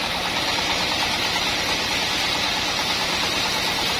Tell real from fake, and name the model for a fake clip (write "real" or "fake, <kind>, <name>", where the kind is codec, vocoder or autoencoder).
real